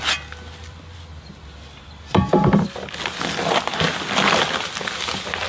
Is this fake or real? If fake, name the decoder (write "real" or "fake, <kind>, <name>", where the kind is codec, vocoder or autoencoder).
real